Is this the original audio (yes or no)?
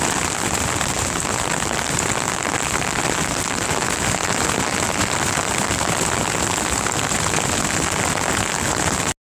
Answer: yes